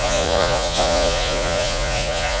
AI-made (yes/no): yes